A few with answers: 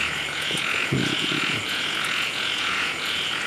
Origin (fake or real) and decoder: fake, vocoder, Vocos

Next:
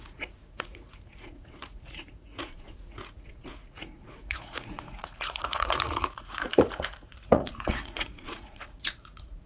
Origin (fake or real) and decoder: fake, vocoder, Vocos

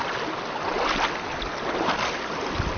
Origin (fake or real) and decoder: real